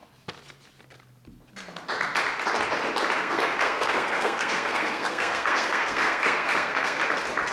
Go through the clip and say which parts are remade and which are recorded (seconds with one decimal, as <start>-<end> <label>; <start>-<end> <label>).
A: 0.0-3.2 recorded; 3.2-7.0 remade; 7.0-7.5 recorded